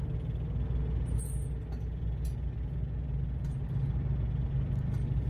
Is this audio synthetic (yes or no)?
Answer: no